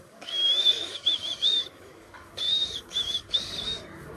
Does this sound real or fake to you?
fake